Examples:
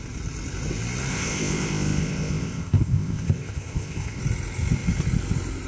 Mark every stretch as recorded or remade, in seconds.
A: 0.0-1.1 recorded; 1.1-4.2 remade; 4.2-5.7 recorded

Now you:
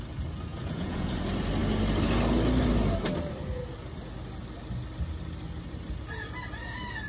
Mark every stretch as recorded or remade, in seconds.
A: 0.0-0.5 recorded; 0.5-1.1 remade; 1.1-7.1 recorded

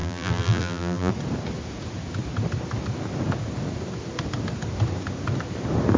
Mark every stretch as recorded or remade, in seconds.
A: 0.0-1.1 remade; 1.1-6.0 recorded

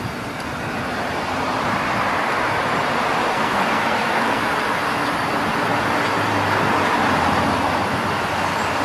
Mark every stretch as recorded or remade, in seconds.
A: 0.0-3.3 recorded; 3.3-4.4 remade; 4.4-8.8 recorded